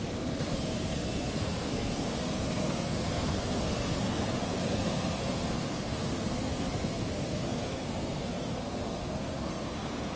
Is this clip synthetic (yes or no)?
yes